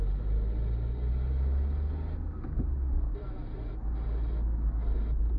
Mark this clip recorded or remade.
recorded